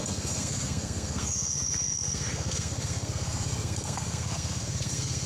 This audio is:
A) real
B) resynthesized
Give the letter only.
B